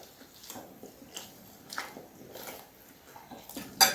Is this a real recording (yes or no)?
yes